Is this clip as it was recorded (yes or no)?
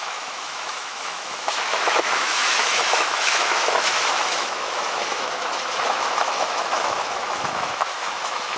no